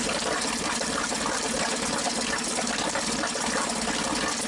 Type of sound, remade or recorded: recorded